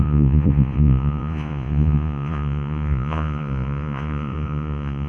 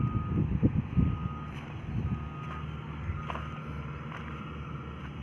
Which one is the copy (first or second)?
first